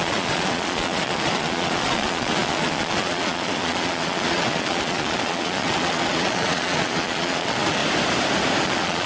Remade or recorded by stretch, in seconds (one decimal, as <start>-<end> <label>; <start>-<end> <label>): 0.0-7.8 remade; 7.8-8.6 recorded; 8.6-9.1 remade